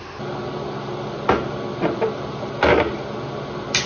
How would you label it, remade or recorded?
recorded